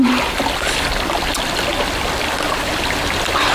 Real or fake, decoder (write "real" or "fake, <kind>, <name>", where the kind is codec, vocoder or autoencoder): real